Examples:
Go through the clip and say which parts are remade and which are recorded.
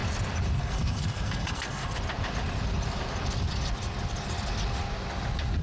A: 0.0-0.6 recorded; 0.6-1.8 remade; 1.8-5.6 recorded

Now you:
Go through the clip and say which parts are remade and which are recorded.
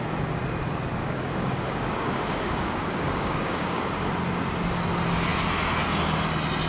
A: 0.0-1.0 recorded; 1.0-3.9 remade; 3.9-6.7 recorded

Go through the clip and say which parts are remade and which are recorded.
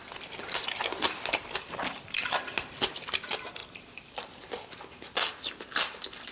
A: 0.0-2.8 remade; 2.8-3.6 recorded; 3.6-5.6 remade; 5.6-6.3 recorded